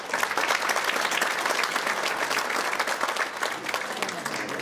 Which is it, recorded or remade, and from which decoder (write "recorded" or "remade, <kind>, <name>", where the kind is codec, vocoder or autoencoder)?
recorded